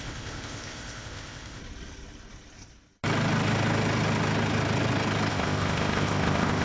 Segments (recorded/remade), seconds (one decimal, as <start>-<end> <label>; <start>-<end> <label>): 0.0-1.6 remade; 1.6-5.3 recorded; 5.3-6.6 remade